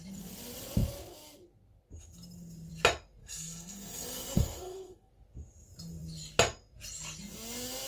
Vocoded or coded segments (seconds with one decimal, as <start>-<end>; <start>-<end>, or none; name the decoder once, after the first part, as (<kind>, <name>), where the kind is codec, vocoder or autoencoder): 3.2-5.1 (codec, SNAC)